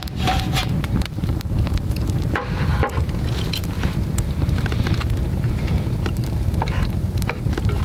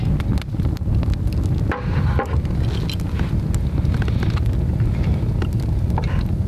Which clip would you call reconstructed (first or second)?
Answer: first